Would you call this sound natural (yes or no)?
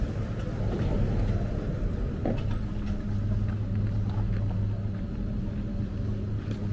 yes